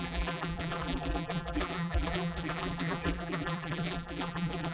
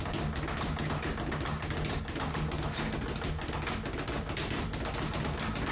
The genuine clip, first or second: second